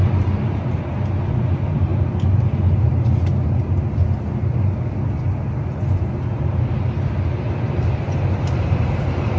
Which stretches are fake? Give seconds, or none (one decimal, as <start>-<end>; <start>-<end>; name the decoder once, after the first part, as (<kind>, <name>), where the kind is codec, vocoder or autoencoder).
none